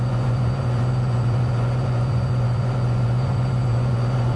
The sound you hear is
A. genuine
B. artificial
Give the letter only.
B